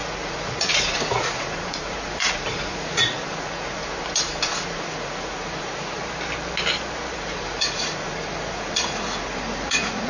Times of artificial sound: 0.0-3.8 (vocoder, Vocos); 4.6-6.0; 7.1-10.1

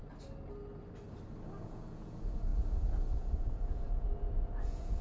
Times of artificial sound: 1.6-5.0 (vocoder, Vocos)